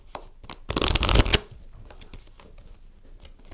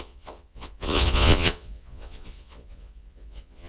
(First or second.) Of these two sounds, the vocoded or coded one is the second